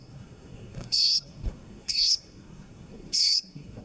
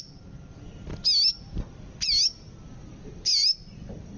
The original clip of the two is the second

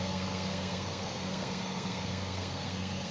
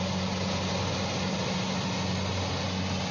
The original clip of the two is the second